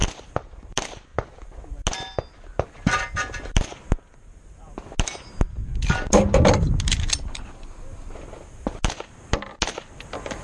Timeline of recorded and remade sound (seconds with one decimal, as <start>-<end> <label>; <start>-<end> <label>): 0.0-10.4 recorded